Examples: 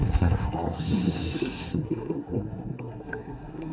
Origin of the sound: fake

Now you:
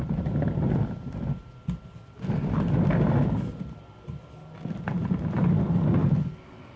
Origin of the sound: real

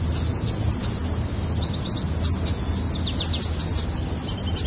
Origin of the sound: real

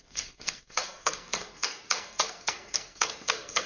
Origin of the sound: fake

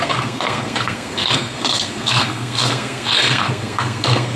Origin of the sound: fake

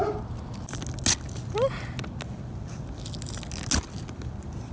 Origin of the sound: real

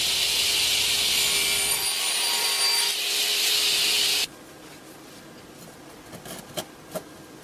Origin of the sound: real